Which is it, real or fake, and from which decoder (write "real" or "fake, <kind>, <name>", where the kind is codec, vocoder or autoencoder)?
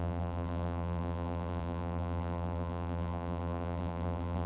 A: fake, vocoder, BigVGAN v2